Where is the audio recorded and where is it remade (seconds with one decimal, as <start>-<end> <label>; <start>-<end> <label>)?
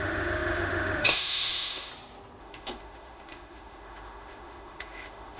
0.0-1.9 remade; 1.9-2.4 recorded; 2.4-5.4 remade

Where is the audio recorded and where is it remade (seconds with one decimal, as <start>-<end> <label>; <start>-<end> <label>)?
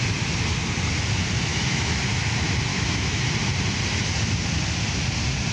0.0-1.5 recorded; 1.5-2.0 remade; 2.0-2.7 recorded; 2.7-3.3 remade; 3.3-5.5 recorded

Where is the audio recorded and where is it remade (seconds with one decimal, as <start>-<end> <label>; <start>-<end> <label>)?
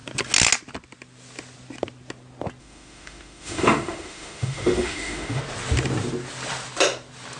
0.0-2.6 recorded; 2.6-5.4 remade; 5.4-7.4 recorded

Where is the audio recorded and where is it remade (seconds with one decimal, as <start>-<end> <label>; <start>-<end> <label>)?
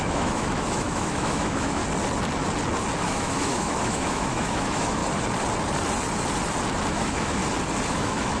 0.0-1.8 remade; 1.8-3.0 recorded; 3.0-5.0 remade; 5.0-6.9 recorded; 6.9-7.4 remade; 7.4-7.9 recorded; 7.9-8.4 remade